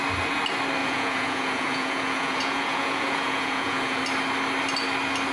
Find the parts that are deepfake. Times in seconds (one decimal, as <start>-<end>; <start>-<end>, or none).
0.8-4.0